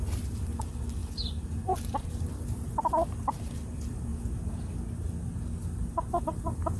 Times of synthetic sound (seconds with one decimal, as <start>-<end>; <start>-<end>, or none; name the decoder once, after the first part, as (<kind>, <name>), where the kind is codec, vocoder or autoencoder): 0.0-4.1 (vocoder, BigVGAN v2); 6.2-6.8